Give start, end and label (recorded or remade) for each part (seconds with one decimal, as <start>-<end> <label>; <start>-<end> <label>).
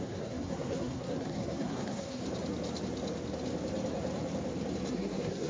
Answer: 0.0-2.2 remade; 2.2-4.9 recorded; 4.9-5.5 remade